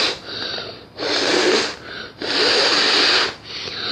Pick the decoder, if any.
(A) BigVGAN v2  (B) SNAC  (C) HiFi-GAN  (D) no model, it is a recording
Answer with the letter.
D